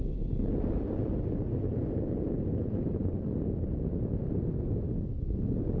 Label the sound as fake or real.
real